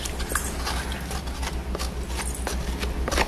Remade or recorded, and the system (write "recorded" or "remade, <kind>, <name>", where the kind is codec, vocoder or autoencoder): recorded